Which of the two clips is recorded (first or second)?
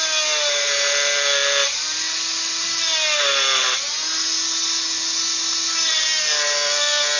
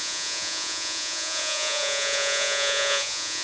first